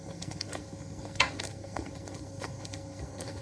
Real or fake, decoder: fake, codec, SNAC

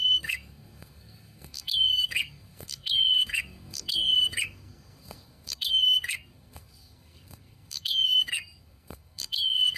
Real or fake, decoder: fake, codec, SNAC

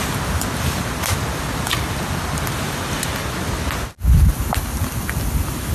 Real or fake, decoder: real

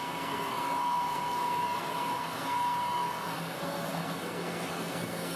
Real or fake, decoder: fake, codec, SNAC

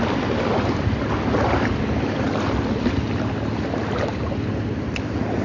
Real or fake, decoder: real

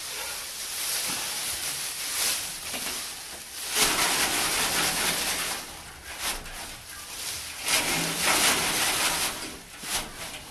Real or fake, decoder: real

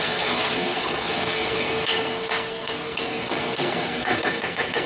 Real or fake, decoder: fake, codec, SNAC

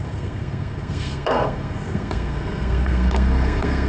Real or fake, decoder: fake, codec, SNAC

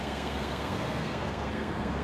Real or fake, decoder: fake, codec, SNAC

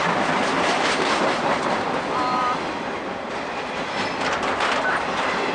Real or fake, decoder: real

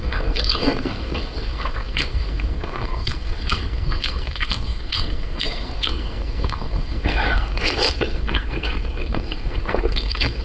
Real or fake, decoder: fake, codec, SNAC